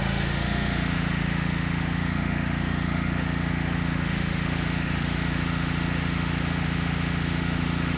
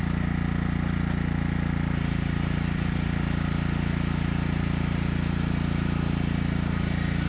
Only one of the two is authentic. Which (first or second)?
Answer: second